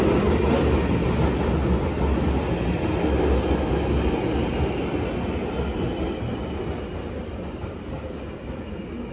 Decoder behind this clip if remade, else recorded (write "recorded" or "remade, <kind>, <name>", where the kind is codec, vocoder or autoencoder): recorded